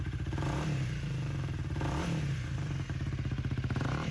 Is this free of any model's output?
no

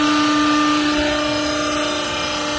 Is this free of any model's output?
yes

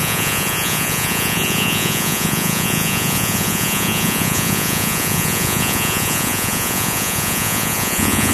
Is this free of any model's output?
no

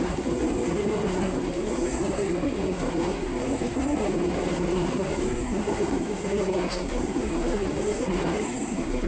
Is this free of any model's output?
no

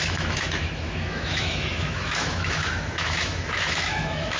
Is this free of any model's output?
no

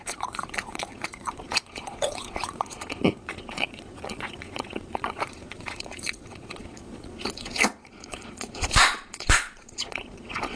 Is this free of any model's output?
no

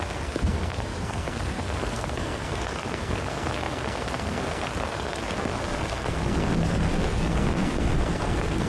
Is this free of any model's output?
no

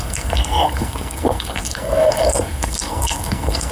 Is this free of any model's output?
no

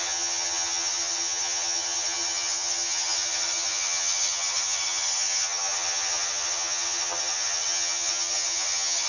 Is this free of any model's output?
no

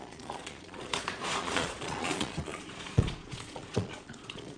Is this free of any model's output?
no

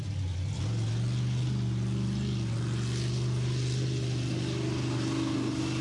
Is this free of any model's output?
yes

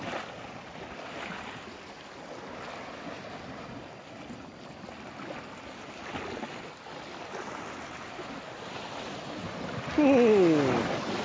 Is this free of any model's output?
yes